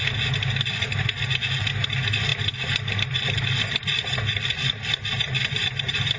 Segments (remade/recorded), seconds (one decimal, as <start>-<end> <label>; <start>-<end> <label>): 0.0-6.2 recorded